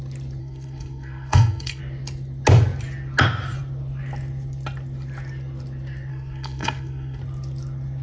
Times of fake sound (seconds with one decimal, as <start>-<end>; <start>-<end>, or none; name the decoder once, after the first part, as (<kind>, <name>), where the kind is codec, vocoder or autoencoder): 0.4-1.8 (codec, SNAC); 6.1-7.2